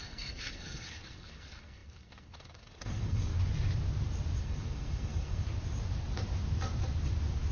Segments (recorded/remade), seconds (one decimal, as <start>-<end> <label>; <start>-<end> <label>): 0.0-3.3 remade; 3.3-4.4 recorded; 4.4-5.5 remade; 5.5-7.5 recorded